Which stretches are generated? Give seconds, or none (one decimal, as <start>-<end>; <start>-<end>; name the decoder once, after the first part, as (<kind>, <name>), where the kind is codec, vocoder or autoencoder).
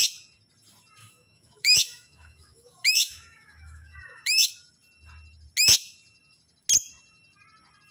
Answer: 1.0-4.5 (autoencoder, DAC-VAE)